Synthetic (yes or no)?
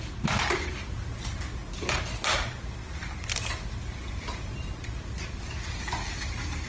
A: no